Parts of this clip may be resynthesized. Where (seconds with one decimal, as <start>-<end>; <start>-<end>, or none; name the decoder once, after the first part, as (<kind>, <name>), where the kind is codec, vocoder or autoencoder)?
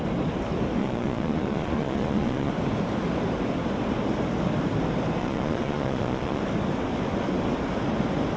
0.8-2.5 (vocoder, Vocos); 5.2-6.4